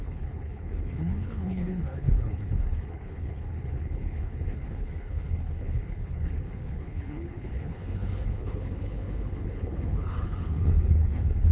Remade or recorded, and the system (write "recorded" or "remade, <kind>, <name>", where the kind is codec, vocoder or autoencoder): remade, codec, HILCodec